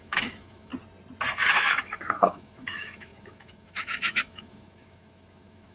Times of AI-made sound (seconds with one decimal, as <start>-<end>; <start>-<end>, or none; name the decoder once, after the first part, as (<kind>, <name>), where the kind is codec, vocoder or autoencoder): 0.0-0.7 (autoencoder, DAC-VAE); 1.5-5.7